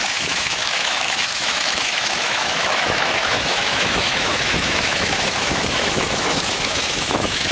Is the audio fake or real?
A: fake